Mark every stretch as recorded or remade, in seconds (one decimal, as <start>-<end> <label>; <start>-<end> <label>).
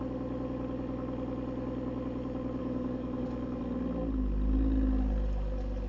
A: 0.0-2.6 recorded; 2.6-3.6 remade; 3.6-5.9 recorded